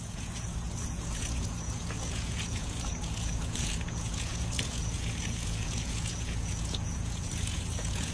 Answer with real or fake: fake